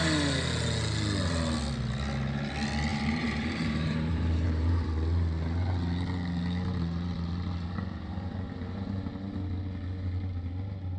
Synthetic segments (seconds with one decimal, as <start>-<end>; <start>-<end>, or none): 2.9-4.9